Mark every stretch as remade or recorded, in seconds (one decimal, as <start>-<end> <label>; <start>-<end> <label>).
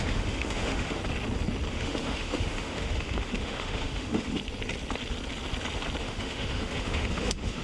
0.0-1.0 remade; 1.0-1.7 recorded; 1.7-4.4 remade; 4.4-6.0 recorded; 6.0-7.6 remade